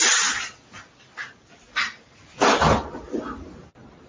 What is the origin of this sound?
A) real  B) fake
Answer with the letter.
A